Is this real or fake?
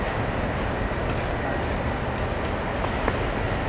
real